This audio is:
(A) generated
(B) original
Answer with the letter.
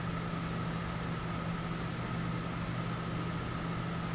B